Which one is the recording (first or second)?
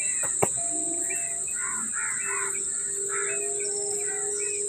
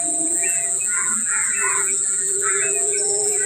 first